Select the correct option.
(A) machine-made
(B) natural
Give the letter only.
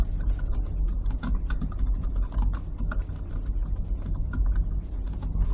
B